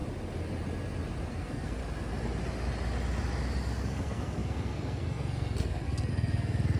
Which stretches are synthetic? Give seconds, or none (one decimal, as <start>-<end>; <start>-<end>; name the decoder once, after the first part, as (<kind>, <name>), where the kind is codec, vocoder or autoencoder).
1.3-1.8 (codec, SNAC); 3.8-6.8